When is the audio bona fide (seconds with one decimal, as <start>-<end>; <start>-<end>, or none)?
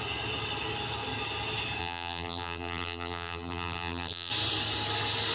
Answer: 0.0-1.8; 4.3-5.3